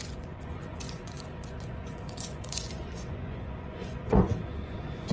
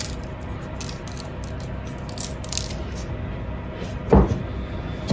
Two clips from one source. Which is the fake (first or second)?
first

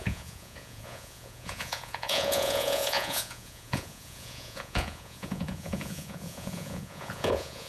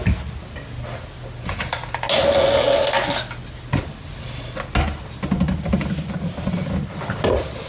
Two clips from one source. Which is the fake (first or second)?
first